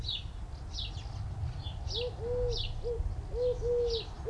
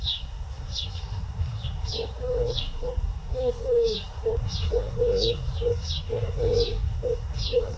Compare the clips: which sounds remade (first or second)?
second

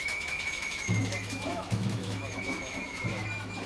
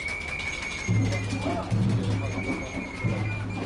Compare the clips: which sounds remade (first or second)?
first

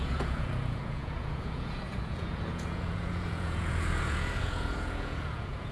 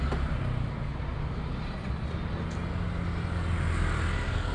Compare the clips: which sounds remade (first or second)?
first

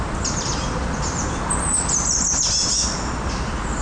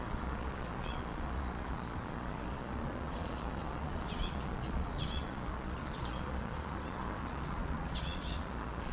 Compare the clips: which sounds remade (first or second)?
second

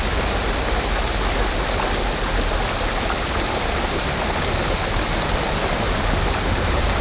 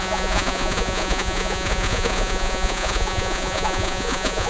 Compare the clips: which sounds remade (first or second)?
second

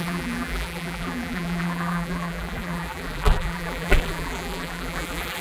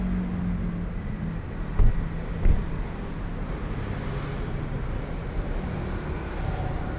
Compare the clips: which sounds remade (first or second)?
first